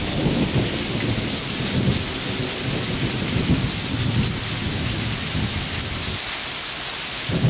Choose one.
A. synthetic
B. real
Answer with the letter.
B